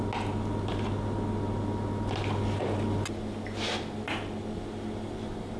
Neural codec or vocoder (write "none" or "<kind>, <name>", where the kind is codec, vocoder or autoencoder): none